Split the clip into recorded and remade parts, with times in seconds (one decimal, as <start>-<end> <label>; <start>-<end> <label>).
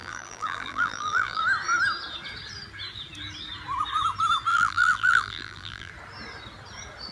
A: 0.0-1.4 remade; 1.4-4.5 recorded; 4.5-5.9 remade; 5.9-7.1 recorded